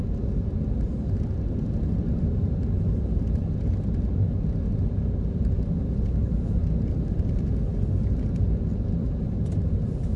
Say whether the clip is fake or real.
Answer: real